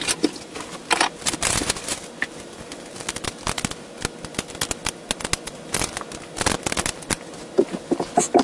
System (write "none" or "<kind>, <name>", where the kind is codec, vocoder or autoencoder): none